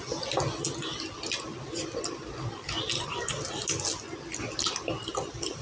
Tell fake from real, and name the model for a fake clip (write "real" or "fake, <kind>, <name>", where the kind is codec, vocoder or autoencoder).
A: real